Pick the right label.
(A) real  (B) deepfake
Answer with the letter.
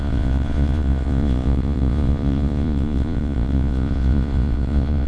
B